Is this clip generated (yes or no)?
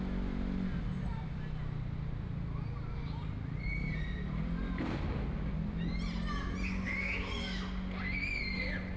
no